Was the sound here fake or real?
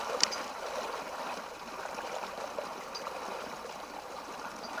fake